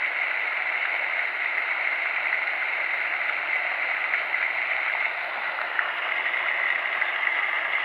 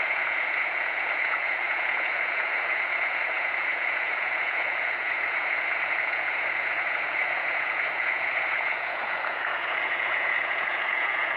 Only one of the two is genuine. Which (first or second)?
first